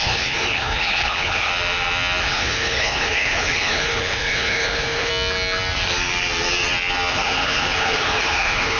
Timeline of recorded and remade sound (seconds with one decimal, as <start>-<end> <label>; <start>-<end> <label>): 0.0-1.5 remade; 1.5-2.2 recorded; 2.2-5.1 remade; 5.1-7.1 recorded; 7.1-8.8 remade